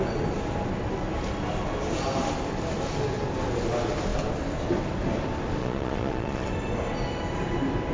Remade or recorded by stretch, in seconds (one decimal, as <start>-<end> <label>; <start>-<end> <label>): 0.0-5.6 recorded; 5.6-6.5 remade; 6.5-7.9 recorded